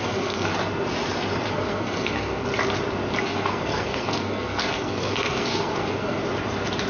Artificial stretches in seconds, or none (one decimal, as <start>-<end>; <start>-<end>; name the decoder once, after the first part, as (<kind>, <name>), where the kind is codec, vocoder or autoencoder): 0.0-0.5 (codec, SNAC); 1.5-2.5; 3.2-6.2